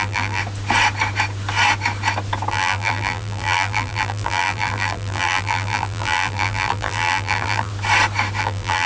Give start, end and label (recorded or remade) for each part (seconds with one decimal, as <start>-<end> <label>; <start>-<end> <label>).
0.0-0.4 remade; 0.4-2.5 recorded; 2.5-7.7 remade; 7.7-8.4 recorded; 8.4-8.9 remade